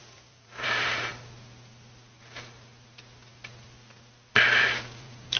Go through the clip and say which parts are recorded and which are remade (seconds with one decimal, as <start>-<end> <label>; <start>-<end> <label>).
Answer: 0.0-1.1 remade; 1.1-4.3 recorded; 4.3-5.4 remade